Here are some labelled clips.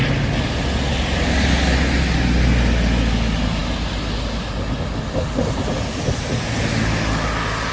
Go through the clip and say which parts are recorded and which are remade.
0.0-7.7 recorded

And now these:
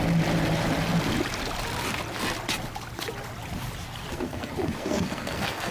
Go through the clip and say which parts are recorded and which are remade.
0.0-4.1 recorded; 4.1-5.7 remade